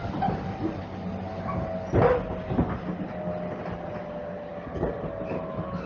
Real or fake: real